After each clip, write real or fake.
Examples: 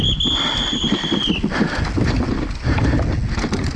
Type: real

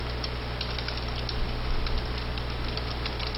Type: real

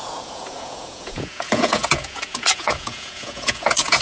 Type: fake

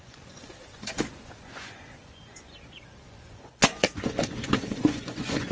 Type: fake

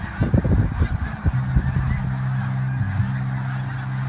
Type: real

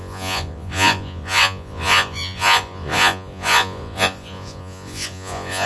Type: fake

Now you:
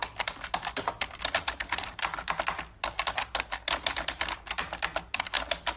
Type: real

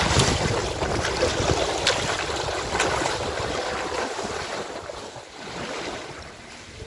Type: real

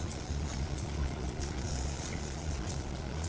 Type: fake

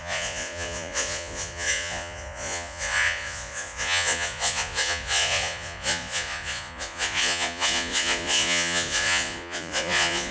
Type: fake